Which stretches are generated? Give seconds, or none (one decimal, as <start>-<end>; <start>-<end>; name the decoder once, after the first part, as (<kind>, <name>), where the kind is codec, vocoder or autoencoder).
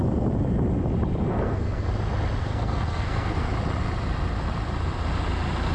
1.2-1.9 (codec, SNAC); 2.4-3.5